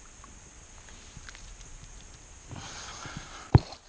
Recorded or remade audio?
recorded